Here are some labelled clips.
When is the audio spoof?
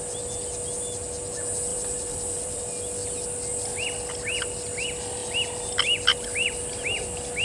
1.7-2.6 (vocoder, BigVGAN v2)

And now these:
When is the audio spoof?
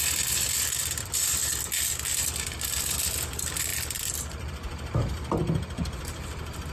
0.0-1.4 (vocoder, BigVGAN v2); 2.2-6.7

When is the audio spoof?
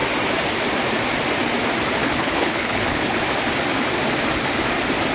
2.0-3.2 (codec, HILCodec)